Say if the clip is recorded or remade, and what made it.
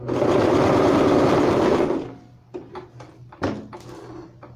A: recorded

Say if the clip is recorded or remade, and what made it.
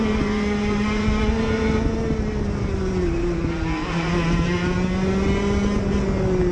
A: recorded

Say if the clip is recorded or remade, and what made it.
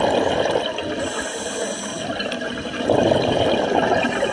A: recorded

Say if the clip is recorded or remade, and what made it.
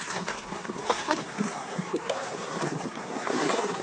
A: remade, codec, SNAC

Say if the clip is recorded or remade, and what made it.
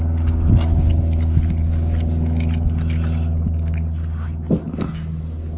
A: recorded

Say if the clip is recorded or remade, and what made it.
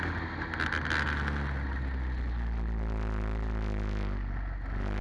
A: recorded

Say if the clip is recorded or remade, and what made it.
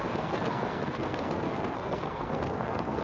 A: remade, codec, SNAC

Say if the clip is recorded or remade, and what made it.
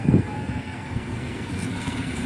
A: remade, codec, SNAC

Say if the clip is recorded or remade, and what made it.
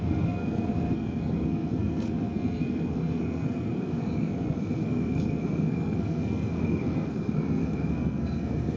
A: remade, codec, SNAC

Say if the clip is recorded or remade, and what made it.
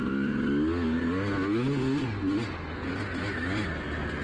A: recorded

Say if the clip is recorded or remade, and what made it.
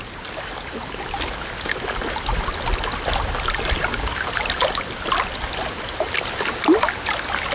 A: recorded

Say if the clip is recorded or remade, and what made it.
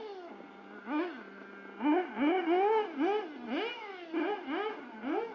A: recorded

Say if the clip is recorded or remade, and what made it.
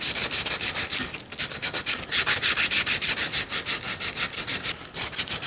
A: recorded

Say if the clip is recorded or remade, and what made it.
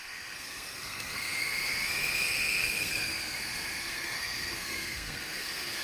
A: remade, codec, SNAC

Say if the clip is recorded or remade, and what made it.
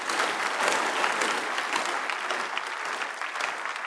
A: recorded